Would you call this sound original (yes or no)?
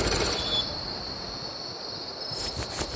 yes